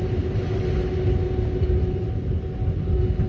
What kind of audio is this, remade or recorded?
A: recorded